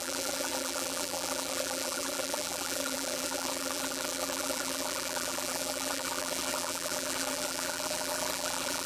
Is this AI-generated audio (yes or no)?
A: yes